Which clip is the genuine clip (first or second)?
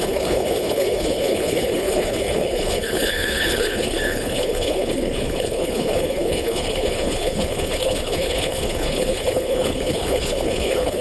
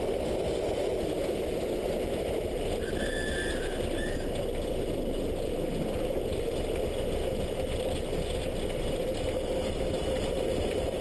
second